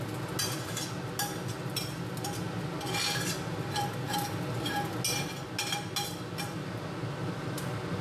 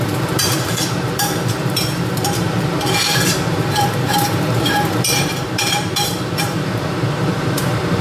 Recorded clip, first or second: first